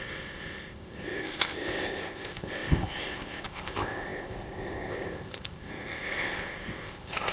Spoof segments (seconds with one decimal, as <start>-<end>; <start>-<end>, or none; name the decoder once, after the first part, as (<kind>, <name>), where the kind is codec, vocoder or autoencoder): 0.0-7.3 (codec, ZipCodec)